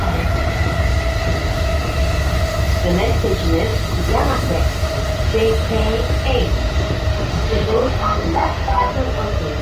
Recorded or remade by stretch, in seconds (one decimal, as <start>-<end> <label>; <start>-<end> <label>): 0.0-7.1 recorded; 7.1-8.9 remade; 8.9-9.6 recorded